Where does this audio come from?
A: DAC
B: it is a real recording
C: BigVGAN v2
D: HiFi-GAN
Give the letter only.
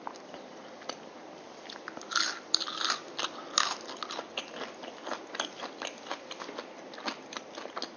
B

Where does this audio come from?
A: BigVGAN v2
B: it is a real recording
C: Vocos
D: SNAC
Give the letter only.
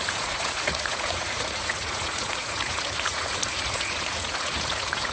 C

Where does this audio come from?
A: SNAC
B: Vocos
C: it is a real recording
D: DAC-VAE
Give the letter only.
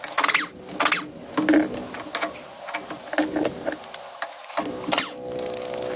C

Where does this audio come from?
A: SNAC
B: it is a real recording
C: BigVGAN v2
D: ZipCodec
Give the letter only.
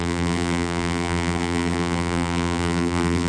C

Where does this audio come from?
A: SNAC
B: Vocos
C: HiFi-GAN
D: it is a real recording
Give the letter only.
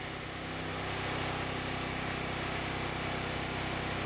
D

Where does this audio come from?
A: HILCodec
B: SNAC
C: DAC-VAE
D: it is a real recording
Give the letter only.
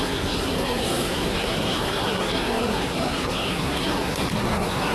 B